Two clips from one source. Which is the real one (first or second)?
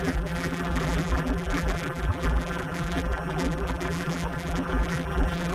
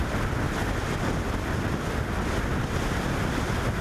second